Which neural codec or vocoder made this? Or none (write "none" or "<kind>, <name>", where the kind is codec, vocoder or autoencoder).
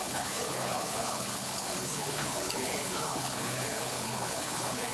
codec, HILCodec